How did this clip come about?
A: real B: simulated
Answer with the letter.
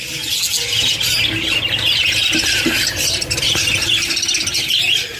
A